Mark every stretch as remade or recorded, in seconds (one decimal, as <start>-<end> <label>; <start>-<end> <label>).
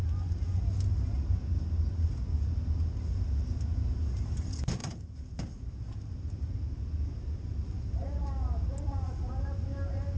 0.0-4.8 recorded; 4.8-6.4 remade; 6.4-10.2 recorded